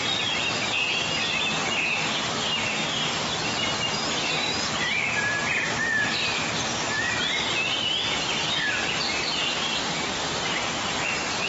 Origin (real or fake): real